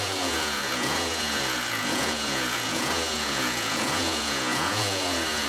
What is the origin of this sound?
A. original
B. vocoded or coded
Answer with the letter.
B